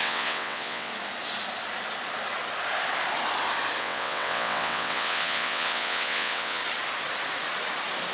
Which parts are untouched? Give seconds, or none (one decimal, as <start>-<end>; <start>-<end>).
0.9-3.8; 6.6-8.1